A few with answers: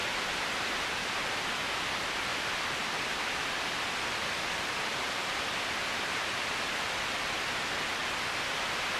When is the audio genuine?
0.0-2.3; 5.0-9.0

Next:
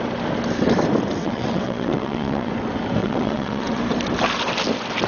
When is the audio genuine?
0.0-1.2; 2.5-3.0; 3.8-5.1